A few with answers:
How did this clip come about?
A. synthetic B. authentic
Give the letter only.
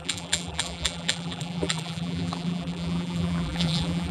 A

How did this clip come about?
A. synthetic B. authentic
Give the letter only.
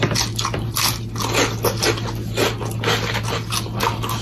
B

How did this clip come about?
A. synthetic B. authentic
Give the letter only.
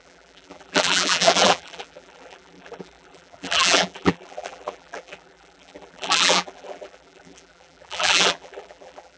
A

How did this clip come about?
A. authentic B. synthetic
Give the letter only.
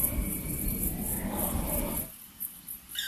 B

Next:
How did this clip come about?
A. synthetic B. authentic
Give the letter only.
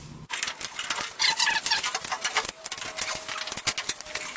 B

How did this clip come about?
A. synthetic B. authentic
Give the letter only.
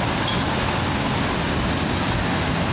B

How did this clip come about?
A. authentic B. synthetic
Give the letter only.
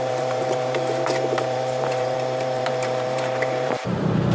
B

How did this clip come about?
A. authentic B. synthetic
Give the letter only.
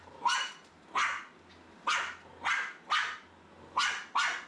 A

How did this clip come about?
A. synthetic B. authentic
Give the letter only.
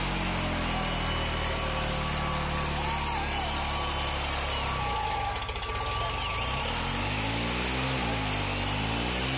B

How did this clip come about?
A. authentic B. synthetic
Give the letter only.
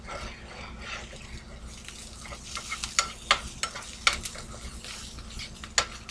A